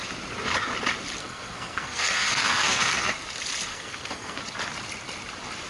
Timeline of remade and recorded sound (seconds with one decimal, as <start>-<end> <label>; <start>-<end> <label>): 0.0-1.2 recorded; 1.2-3.1 remade; 3.1-3.7 recorded; 3.7-4.4 remade; 4.4-5.7 recorded